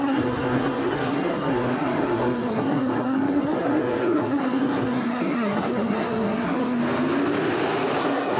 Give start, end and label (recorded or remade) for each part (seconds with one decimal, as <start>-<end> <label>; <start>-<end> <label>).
0.0-6.8 remade; 6.8-8.0 recorded; 8.0-8.4 remade